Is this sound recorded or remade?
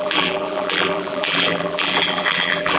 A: remade